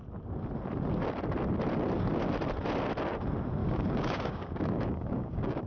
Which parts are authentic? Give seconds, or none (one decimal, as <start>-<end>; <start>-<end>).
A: 0.0-3.6